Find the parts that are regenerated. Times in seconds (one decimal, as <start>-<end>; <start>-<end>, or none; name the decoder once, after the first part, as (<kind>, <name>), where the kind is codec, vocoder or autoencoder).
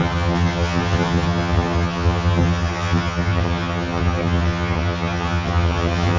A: 0.0-6.2 (vocoder, HiFi-GAN)